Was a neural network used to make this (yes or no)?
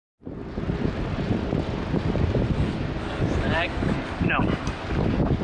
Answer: no